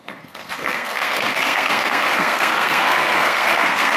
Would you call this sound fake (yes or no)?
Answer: yes